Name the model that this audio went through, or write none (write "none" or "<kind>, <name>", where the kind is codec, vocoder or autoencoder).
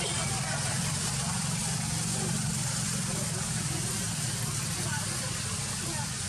none